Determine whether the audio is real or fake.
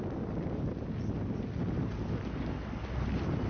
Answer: real